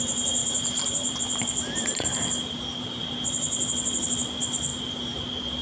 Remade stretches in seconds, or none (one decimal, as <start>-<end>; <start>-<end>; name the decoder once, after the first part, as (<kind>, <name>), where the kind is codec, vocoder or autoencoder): 0.4-3.0 (vocoder, BigVGAN v2); 4.7-5.6